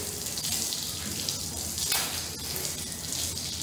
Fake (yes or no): no